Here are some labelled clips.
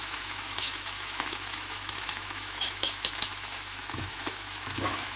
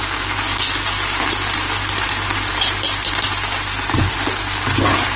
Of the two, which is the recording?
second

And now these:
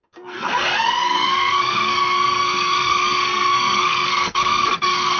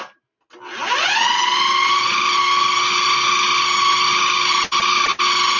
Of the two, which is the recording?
second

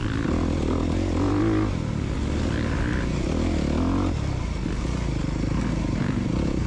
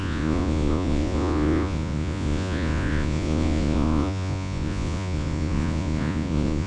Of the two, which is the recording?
first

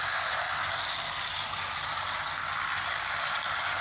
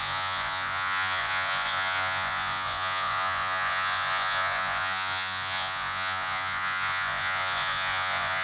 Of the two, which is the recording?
first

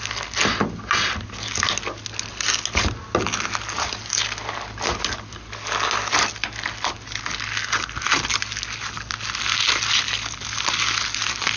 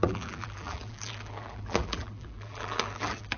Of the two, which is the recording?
first